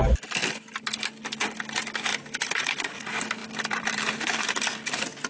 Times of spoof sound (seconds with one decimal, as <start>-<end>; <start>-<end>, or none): 2.1-3.0; 3.4-4.4